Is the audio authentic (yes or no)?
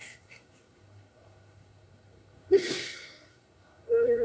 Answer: no